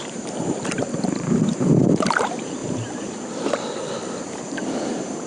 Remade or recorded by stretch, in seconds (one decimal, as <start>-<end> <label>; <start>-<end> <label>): 0.0-5.3 remade